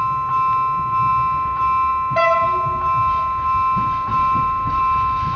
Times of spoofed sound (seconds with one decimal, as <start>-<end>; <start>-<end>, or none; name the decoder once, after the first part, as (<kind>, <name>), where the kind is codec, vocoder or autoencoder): 4.1-4.8 (vocoder, BigVGAN v2)